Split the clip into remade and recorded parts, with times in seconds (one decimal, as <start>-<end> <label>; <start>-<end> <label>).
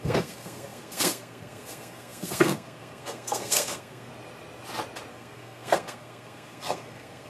0.0-4.1 remade; 4.1-5.1 recorded; 5.1-7.3 remade